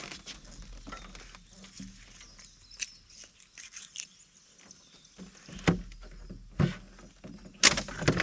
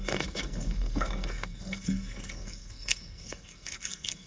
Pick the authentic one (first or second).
first